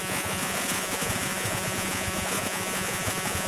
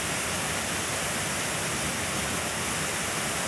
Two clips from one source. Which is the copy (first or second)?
first